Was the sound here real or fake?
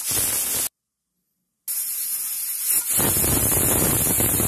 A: real